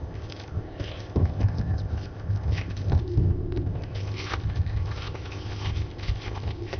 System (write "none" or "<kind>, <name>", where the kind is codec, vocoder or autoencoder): codec, ZipCodec